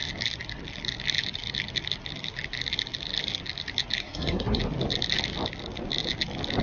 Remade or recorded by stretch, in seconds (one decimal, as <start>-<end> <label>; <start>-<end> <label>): 0.0-4.0 recorded; 4.0-4.6 remade; 4.6-6.6 recorded